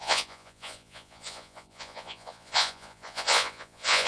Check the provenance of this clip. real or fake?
fake